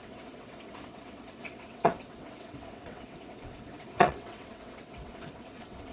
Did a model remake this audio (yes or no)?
yes